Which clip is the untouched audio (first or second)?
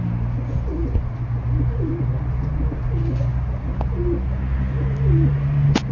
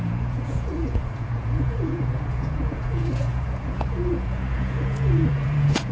first